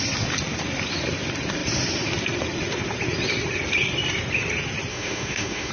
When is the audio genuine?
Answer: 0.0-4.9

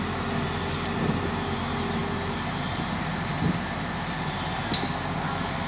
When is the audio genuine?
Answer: 0.0-5.7

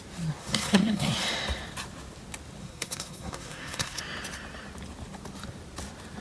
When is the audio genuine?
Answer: 0.0-0.4; 1.1-2.6; 4.0-6.2

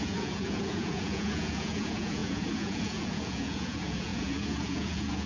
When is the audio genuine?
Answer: none

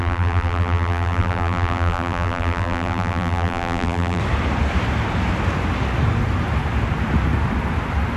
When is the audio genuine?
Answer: 4.2-8.2

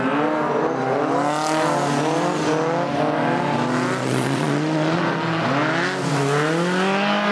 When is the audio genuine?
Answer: 0.0-4.0; 5.0-7.3

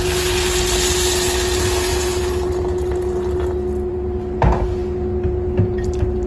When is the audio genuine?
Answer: 0.0-6.3